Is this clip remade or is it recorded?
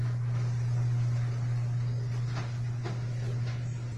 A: recorded